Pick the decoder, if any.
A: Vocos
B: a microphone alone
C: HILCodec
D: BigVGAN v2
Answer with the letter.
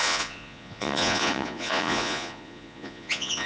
A